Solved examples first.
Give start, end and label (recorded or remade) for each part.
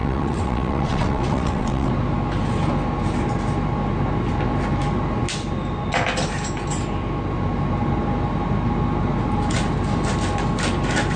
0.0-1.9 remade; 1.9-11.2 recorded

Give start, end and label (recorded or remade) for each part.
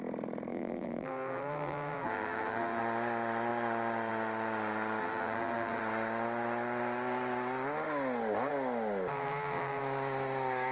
0.0-0.5 recorded; 0.5-2.8 remade; 2.8-5.0 recorded; 5.0-5.8 remade; 5.8-9.1 recorded; 9.1-9.8 remade; 9.8-10.7 recorded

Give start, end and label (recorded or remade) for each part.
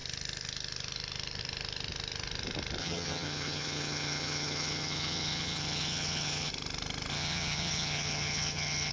0.0-2.8 recorded; 2.8-6.5 remade; 6.5-7.1 recorded; 7.1-8.9 remade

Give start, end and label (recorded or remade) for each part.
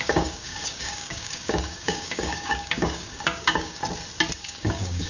0.0-3.8 remade; 3.8-4.4 recorded; 4.4-5.1 remade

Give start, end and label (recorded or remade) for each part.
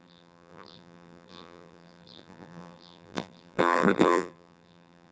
0.0-5.1 remade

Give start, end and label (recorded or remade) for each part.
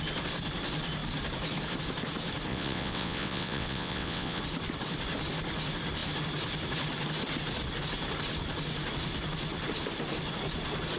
0.0-2.5 recorded; 2.5-4.4 remade; 4.4-11.0 recorded